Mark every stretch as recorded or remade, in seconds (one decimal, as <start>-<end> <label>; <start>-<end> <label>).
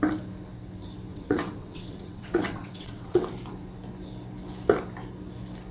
0.0-1.1 recorded; 1.1-3.3 remade; 3.3-5.7 recorded